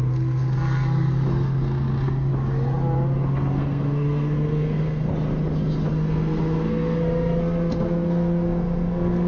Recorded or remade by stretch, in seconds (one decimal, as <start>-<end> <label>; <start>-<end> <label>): 0.0-2.3 remade; 2.3-3.5 recorded; 3.5-5.1 remade; 5.1-5.9 recorded; 5.9-9.3 remade